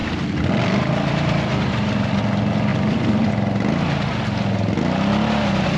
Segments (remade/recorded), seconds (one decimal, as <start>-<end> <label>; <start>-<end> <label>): 0.0-2.2 remade; 2.2-2.7 recorded; 2.7-3.3 remade; 3.3-5.8 recorded